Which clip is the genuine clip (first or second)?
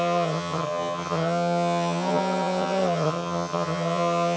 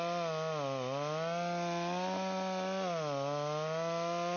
second